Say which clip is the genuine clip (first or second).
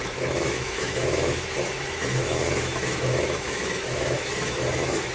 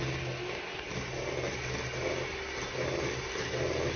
second